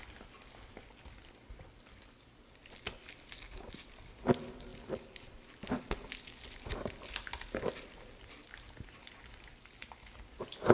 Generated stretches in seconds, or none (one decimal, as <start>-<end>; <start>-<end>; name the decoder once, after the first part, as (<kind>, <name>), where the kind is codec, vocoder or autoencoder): none